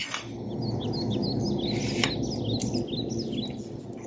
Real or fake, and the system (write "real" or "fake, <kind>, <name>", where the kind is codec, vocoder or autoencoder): real